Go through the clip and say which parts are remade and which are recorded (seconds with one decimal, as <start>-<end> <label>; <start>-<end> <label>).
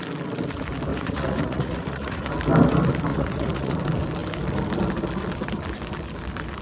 0.0-0.9 recorded; 0.9-2.3 remade; 2.3-3.1 recorded; 3.1-3.8 remade; 3.8-6.6 recorded